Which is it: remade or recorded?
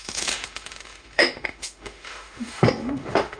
remade